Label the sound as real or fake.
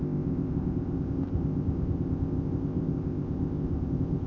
fake